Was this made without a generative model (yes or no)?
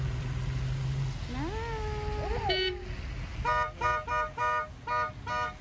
yes